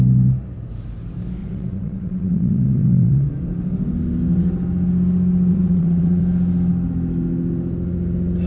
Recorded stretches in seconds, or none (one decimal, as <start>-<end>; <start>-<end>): 0.0-1.4; 3.3-5.5; 6.2-8.5